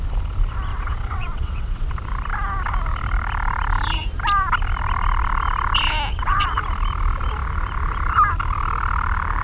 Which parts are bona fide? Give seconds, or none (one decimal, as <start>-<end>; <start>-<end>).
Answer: 0.0-0.7; 1.9-6.1; 6.6-9.4